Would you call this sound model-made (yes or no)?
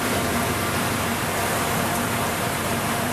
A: yes